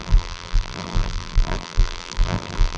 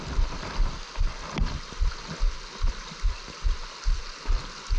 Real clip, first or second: second